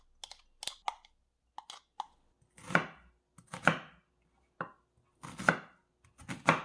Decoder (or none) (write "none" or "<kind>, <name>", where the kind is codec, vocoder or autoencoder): none